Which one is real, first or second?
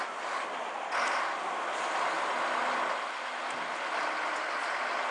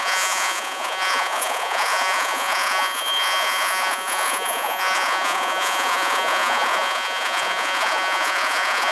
first